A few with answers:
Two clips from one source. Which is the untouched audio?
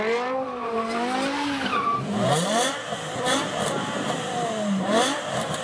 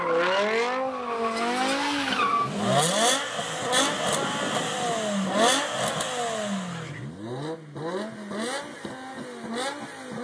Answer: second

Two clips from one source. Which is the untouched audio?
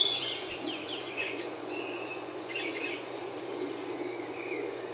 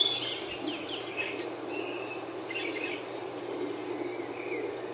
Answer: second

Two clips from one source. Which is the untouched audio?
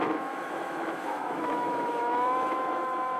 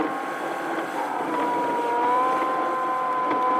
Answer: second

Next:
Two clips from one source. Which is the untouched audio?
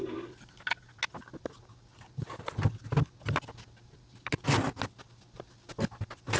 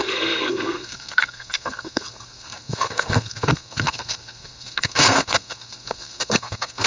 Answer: first